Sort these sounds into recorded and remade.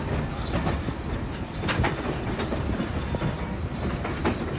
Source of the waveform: recorded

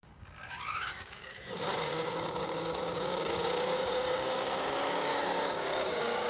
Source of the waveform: remade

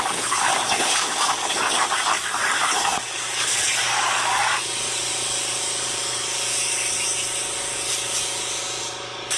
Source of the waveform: remade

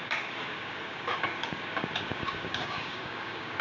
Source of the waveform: remade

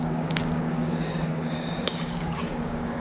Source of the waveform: remade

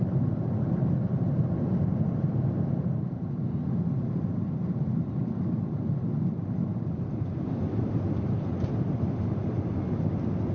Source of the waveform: recorded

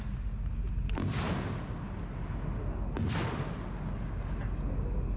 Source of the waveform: recorded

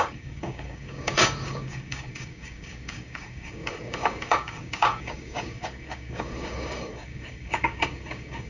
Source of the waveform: remade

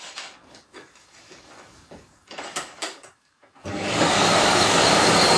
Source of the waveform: remade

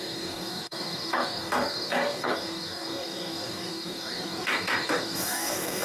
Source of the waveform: remade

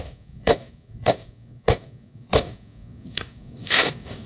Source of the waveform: remade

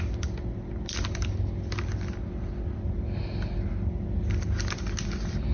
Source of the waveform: recorded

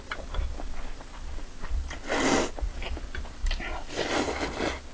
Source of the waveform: recorded